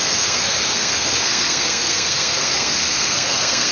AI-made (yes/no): yes